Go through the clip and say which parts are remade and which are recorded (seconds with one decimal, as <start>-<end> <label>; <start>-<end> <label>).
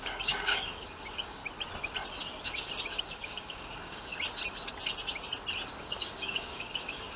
0.0-1.4 remade; 1.4-3.0 recorded; 3.0-4.1 remade; 4.1-5.8 recorded; 5.8-7.2 remade